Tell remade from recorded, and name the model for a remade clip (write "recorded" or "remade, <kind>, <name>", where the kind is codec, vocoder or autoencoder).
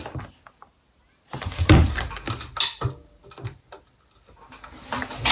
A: recorded